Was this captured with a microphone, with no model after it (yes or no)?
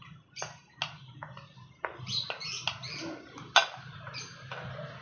yes